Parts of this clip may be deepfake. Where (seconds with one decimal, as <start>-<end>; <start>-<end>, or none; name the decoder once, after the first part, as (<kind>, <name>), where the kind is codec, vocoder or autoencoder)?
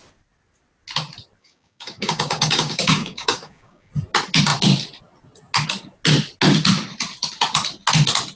1.4-3.9 (codec, DAC)